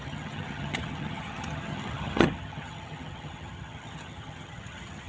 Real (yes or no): no